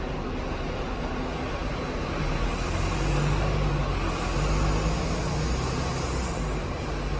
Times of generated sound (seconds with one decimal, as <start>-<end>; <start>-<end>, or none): none